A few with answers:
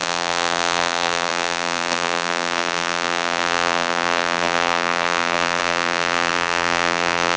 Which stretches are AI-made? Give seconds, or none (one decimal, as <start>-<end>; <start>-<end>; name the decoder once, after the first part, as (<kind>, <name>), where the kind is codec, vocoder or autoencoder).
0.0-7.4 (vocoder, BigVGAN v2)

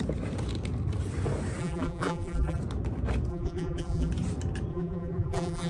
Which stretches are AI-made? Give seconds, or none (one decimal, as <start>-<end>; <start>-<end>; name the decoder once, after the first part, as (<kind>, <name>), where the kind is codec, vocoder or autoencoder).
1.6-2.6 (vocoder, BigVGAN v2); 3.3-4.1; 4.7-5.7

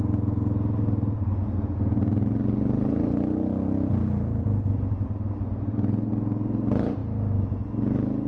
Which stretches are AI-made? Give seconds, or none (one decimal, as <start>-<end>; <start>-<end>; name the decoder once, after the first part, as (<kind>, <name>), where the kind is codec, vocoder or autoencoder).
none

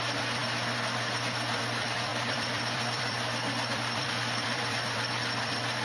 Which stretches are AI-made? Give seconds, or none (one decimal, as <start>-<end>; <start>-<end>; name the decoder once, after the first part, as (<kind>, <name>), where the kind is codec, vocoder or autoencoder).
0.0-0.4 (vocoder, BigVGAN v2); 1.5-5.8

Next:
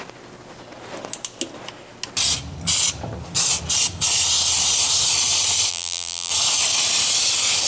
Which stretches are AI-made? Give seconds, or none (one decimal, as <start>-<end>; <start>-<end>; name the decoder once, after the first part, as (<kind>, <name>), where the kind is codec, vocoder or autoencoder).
5.7-6.3 (vocoder, BigVGAN v2)